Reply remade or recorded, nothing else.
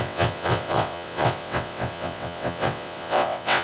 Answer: remade